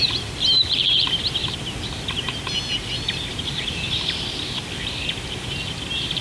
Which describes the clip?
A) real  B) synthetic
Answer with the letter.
A